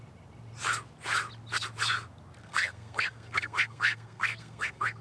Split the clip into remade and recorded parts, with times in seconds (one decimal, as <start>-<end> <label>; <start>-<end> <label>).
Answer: 0.0-2.4 recorded; 2.4-5.0 remade